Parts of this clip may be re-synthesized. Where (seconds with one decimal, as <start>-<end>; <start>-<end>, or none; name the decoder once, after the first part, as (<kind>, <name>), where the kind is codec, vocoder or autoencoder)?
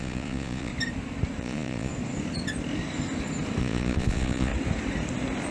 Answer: 0.0-0.7 (vocoder, Vocos); 1.4-1.9; 3.6-4.5